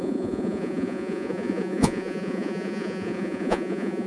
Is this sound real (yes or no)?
no